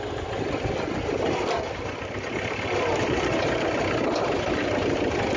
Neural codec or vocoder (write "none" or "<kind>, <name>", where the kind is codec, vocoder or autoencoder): none